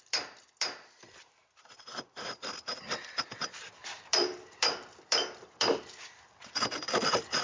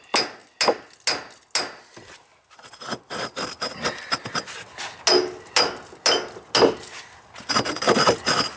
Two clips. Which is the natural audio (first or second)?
second